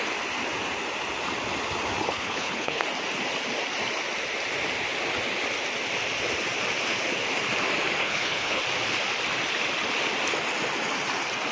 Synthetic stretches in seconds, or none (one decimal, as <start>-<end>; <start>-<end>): 2.0-2.8; 8.0-8.6